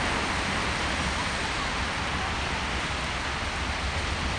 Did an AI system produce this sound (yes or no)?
no